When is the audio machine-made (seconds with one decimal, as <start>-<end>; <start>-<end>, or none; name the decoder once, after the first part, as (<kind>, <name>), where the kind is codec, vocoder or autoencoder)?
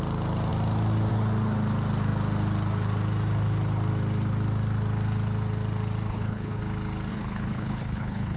6.1-6.6 (codec, HILCodec); 7.1-8.4